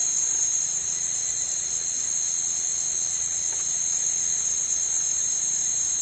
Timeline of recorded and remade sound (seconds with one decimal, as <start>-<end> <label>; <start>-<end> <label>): 0.0-0.6 remade; 0.6-6.0 recorded